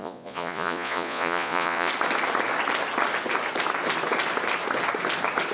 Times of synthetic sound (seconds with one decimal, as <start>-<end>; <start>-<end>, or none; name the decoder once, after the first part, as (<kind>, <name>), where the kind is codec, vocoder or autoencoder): 0.0-1.9 (vocoder, Vocos)